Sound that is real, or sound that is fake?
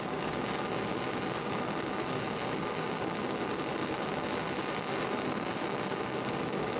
real